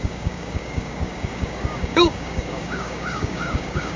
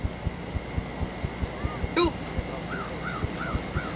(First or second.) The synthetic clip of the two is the first